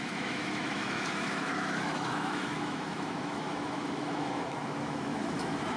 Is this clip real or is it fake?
fake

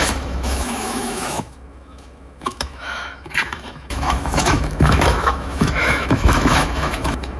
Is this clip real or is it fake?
fake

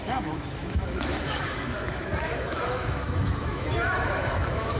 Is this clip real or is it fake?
fake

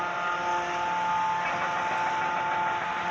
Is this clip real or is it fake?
real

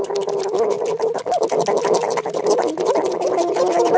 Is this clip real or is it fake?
real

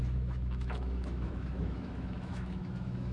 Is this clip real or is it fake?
fake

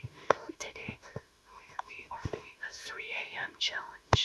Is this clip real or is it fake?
fake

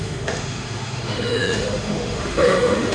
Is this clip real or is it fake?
fake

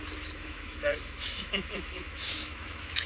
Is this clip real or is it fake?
fake